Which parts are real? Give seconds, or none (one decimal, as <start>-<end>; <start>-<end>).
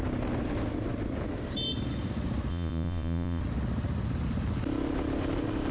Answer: 0.0-2.5; 3.4-5.7